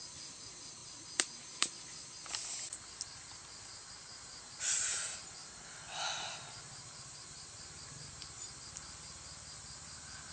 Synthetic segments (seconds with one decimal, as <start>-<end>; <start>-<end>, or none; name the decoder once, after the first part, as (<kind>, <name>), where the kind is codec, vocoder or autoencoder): none